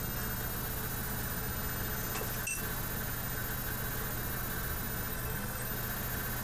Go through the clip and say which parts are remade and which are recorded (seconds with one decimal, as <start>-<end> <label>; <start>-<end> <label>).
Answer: 0.0-5.1 recorded; 5.1-5.7 remade; 5.7-6.4 recorded